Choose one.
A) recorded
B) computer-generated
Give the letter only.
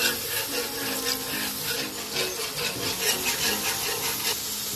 A